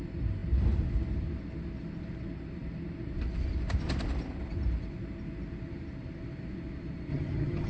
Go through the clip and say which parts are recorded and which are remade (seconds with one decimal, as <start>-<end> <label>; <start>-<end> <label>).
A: 0.0-7.1 recorded; 7.1-7.7 remade